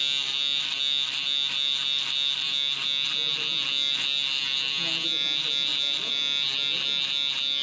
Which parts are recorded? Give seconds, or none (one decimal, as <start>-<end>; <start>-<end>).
0.0-7.6

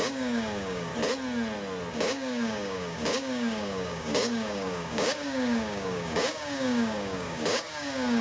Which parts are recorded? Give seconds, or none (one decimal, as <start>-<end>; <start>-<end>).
0.9-1.9

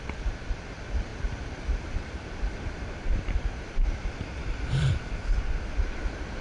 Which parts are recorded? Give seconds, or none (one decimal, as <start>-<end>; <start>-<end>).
0.0-1.1; 4.9-6.4

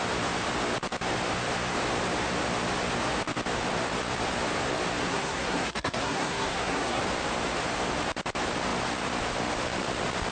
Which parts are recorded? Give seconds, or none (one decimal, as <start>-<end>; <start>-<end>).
0.0-5.0; 7.0-10.3

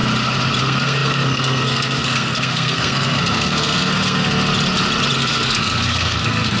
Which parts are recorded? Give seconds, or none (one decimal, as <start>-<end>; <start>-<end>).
0.0-0.6; 4.3-5.2

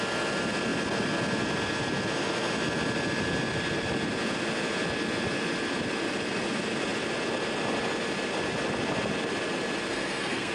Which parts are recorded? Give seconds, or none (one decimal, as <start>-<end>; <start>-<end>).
0.0-9.9

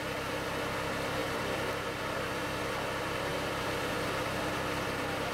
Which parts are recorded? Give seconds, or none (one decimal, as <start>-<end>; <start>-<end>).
0.0-1.2; 2.7-3.3; 3.9-5.3